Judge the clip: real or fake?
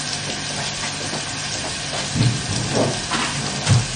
real